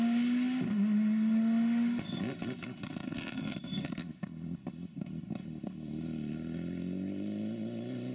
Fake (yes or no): no